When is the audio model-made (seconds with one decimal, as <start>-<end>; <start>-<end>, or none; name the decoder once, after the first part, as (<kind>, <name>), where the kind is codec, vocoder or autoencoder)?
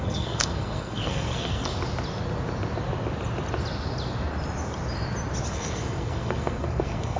0.0-1.7 (codec, SNAC); 5.5-7.2